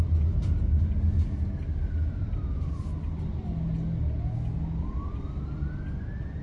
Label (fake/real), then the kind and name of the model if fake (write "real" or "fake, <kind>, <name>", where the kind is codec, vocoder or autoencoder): real